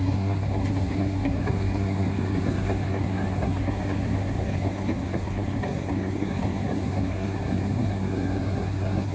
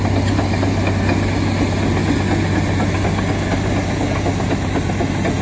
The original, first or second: second